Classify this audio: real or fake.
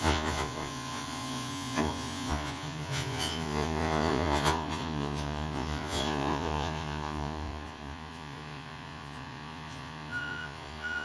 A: fake